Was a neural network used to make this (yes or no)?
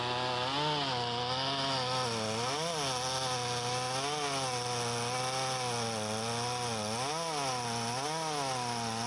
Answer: no